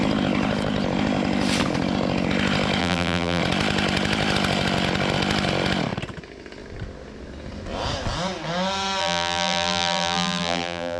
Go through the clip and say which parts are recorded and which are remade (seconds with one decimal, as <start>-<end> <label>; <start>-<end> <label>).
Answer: 0.0-2.8 recorded; 2.8-3.4 remade; 3.4-9.0 recorded; 9.0-11.0 remade